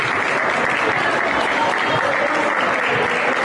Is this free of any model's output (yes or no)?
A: yes